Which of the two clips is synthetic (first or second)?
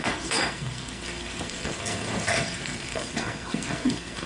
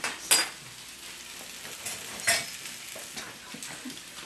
first